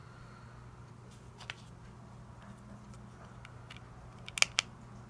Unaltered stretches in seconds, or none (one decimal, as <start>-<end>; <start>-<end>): 0.0-5.1

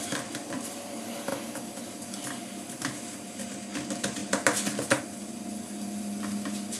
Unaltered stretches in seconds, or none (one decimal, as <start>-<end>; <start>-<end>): 0.0-6.8

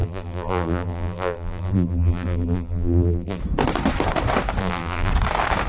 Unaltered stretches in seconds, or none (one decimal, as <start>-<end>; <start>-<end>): 3.4-4.6; 5.1-5.7